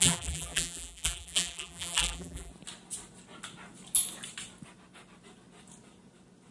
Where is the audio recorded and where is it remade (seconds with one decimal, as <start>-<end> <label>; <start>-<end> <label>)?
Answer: 0.0-2.5 remade; 2.5-6.5 recorded